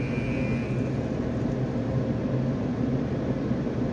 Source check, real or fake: real